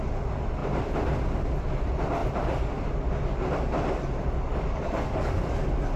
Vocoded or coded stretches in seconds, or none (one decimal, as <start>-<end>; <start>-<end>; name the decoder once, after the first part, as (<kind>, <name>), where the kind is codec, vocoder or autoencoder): 4.5-5.4 (codec, DAC)